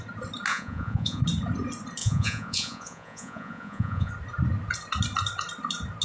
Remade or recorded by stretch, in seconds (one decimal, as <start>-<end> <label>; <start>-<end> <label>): 0.0-0.5 recorded; 0.5-1.2 remade; 1.2-2.0 recorded; 2.0-4.1 remade; 4.1-6.0 recorded